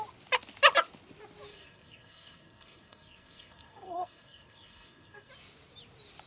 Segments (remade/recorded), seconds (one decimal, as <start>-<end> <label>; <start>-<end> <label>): 0.0-1.5 recorded; 1.5-5.3 remade; 5.3-6.3 recorded